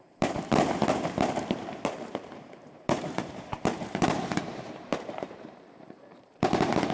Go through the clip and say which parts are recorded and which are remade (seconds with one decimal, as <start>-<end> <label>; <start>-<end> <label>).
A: 0.0-6.9 remade